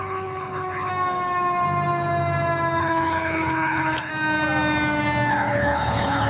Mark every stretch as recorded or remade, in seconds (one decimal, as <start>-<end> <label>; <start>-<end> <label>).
0.0-0.9 remade; 0.9-2.8 recorded; 2.8-4.1 remade; 4.1-5.3 recorded; 5.3-6.3 remade